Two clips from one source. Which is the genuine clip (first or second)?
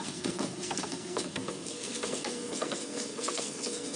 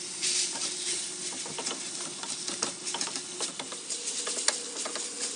second